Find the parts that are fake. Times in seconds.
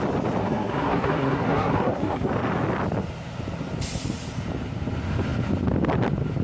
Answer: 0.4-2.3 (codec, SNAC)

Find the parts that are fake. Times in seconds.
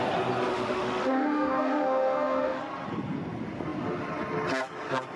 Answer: 0.5-2.6 (autoencoder, DAC-VAE)